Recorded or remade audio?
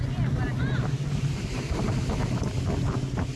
recorded